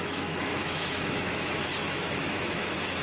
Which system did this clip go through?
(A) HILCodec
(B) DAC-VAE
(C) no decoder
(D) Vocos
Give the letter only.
B